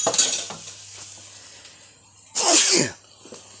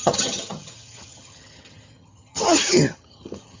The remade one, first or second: second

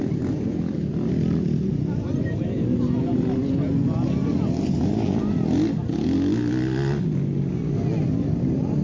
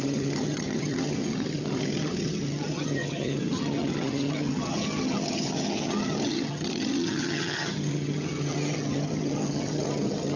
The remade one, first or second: second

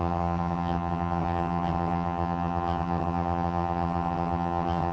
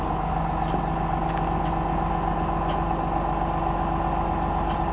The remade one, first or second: first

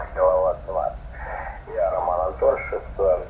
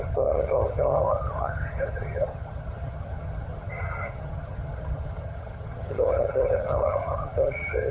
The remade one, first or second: second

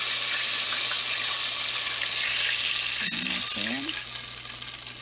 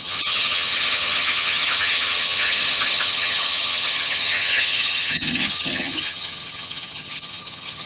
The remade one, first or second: second